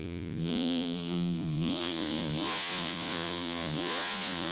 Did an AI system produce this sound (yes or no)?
yes